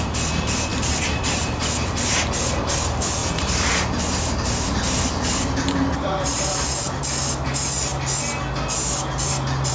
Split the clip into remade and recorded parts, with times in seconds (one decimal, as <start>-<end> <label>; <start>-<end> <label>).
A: 0.0-0.7 recorded; 0.7-1.4 remade; 1.4-3.2 recorded; 3.2-7.0 remade; 7.0-9.7 recorded